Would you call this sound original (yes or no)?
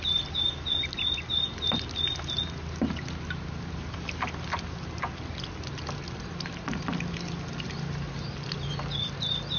yes